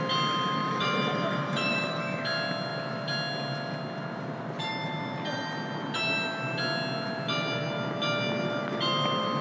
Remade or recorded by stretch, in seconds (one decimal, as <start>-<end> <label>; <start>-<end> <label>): 0.0-0.6 recorded; 0.6-2.0 remade; 2.0-9.4 recorded